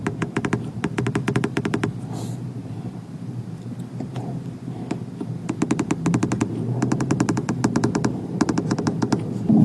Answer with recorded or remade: recorded